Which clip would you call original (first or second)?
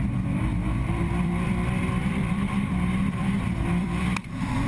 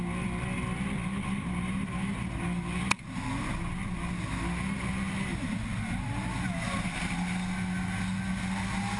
second